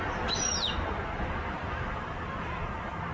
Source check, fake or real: real